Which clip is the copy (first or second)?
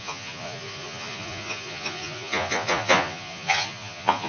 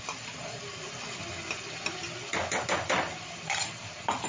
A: first